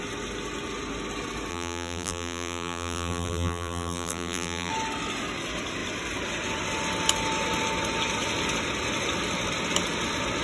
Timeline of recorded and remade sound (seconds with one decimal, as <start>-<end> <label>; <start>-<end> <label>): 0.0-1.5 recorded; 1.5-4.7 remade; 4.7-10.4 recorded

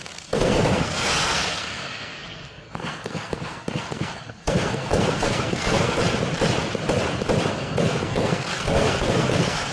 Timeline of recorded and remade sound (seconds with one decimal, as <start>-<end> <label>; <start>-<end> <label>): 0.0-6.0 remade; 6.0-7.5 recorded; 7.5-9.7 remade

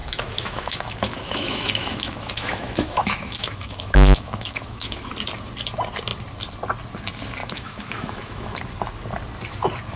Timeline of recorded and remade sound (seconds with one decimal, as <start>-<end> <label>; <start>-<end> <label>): 0.0-5.1 remade; 5.1-7.4 recorded; 7.4-8.6 remade; 8.6-10.0 recorded

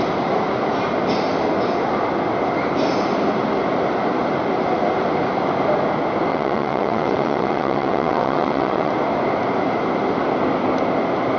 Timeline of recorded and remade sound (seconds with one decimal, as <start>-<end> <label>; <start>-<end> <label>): 0.0-6.3 recorded; 6.3-8.9 remade; 8.9-11.4 recorded